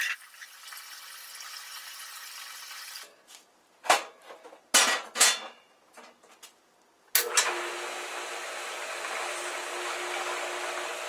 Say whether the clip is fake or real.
real